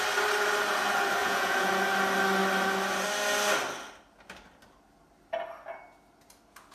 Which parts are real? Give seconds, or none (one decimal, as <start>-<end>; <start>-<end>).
0.0-1.2; 1.7-6.7